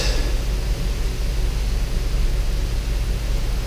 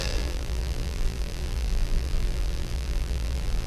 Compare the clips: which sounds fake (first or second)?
second